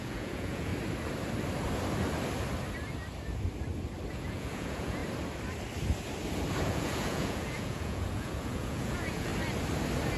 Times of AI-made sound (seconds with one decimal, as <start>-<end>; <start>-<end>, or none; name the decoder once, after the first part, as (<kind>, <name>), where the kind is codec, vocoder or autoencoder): 0.0-0.7 (vocoder, Vocos); 4.1-5.0; 6.6-9.3